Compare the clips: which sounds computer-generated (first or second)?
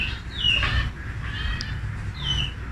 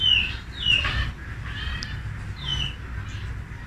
second